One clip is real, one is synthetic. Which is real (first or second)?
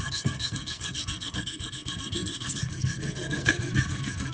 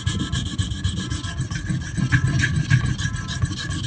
second